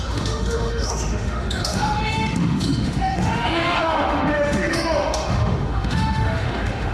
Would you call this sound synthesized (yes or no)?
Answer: yes